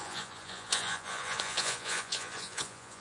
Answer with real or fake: fake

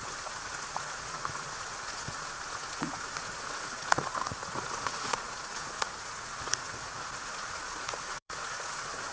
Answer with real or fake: fake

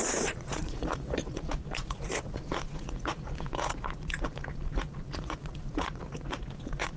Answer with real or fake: fake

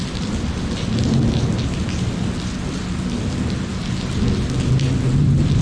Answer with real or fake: real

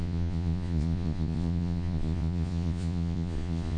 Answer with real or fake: fake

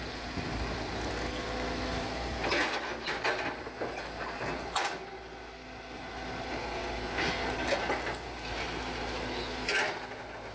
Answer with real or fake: real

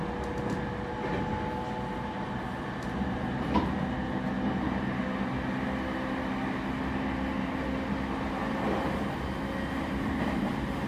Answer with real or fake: real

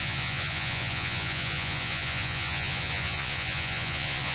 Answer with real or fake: fake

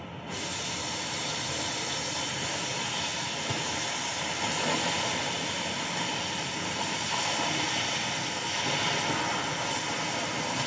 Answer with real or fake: real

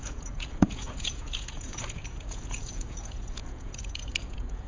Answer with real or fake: fake